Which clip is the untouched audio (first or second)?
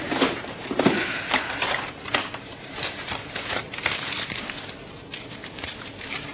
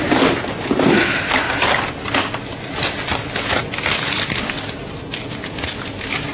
second